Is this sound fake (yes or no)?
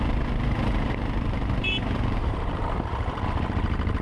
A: yes